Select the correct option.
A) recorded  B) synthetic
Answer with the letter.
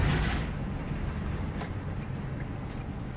A